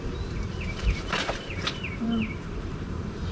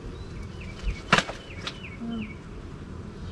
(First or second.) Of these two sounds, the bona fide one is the second